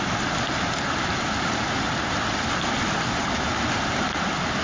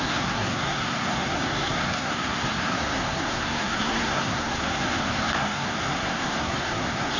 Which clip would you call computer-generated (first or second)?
second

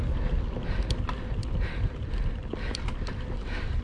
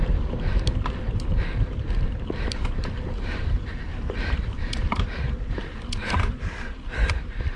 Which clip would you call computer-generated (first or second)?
second